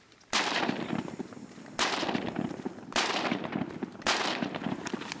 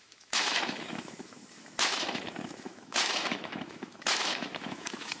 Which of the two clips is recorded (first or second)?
first